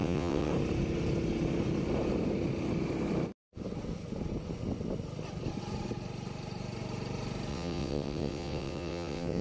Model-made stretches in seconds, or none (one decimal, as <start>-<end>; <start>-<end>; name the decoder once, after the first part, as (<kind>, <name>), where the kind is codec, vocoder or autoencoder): 0.0-0.5 (vocoder, WaveNeXt); 7.5-9.4